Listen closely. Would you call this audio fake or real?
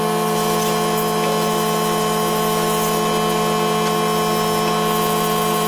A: real